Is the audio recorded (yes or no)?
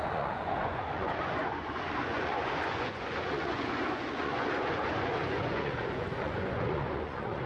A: no